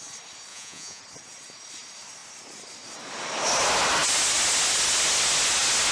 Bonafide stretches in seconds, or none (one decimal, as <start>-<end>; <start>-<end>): 0.0-0.5; 1.0-5.9